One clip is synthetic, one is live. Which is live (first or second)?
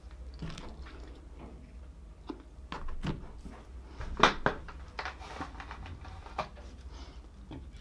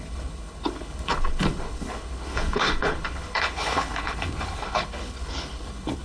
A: first